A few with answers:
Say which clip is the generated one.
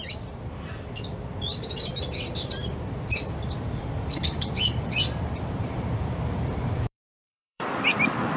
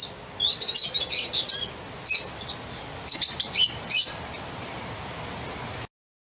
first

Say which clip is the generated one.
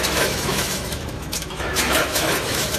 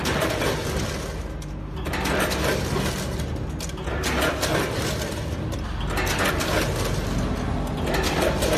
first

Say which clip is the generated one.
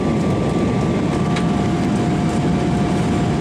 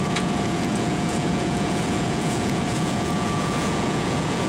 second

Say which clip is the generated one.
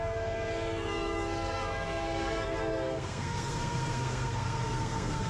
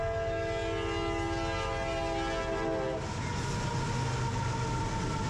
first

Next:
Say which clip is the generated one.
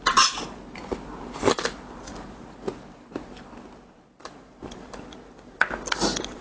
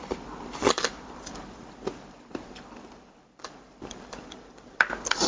second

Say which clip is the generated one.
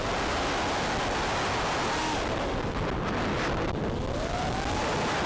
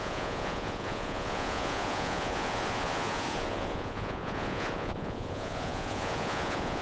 second